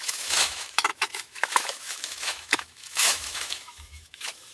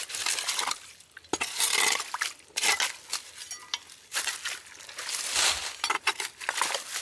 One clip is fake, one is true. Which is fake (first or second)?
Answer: first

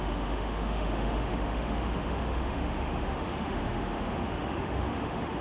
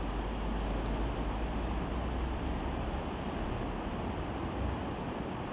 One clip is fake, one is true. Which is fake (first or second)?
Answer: first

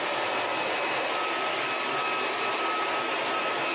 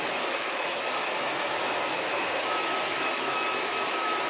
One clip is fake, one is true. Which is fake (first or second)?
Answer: second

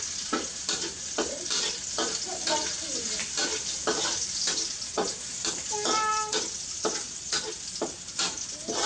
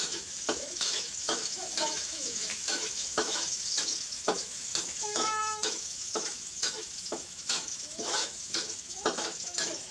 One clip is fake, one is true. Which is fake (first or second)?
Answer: second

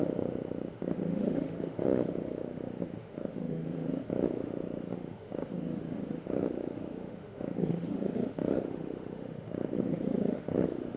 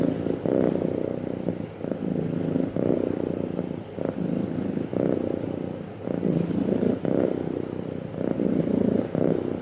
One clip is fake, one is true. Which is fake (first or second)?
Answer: first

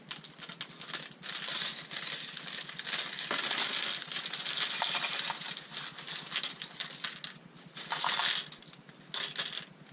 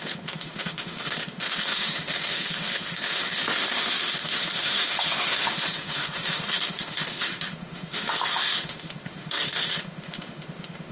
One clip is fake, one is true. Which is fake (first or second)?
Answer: second